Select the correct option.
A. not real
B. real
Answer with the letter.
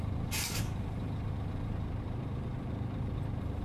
A